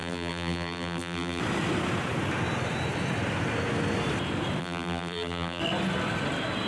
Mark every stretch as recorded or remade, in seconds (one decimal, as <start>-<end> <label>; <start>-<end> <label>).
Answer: 0.0-1.4 remade; 1.4-4.6 recorded; 4.6-5.6 remade; 5.6-6.7 recorded